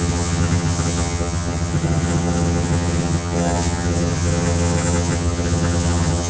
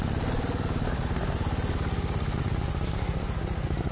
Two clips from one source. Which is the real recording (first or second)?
second